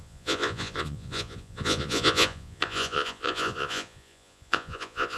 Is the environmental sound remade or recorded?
remade